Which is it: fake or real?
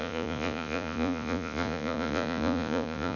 fake